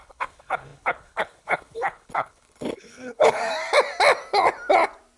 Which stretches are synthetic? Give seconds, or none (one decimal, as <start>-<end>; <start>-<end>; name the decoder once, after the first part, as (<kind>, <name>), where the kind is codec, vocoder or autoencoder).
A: 0.0-3.4 (codec, HILCodec)